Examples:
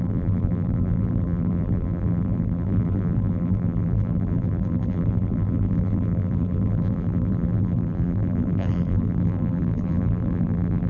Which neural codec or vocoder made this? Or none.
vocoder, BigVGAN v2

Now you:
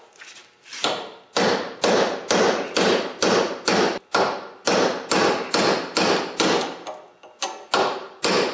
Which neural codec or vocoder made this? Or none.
none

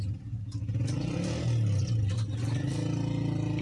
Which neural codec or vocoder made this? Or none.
none